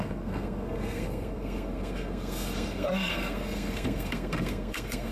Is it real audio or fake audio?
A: fake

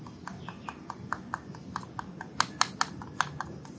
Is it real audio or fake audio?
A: real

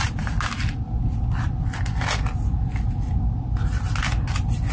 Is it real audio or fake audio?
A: real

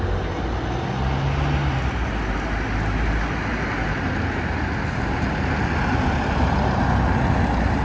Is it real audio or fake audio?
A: real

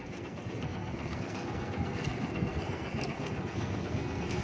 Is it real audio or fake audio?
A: fake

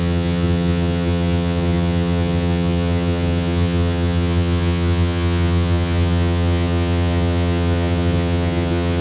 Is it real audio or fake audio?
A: fake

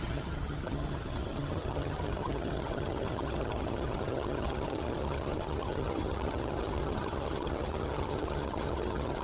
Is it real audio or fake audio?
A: fake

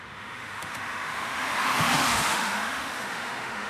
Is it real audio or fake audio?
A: fake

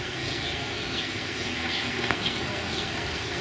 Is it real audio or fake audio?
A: fake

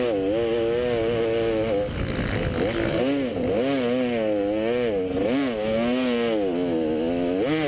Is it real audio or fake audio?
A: real